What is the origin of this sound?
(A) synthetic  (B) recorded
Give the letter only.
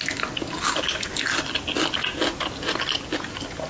B